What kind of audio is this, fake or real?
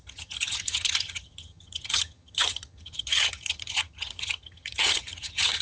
fake